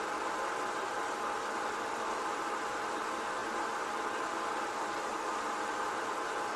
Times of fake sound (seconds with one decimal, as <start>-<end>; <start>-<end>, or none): none